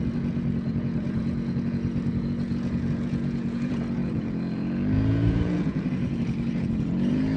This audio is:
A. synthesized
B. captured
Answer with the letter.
A